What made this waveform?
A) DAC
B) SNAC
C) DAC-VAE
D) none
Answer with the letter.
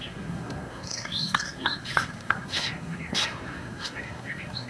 B